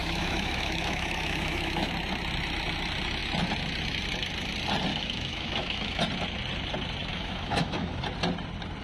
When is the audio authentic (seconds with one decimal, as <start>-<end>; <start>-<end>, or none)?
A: 1.9-4.9; 6.0-7.1; 8.0-8.8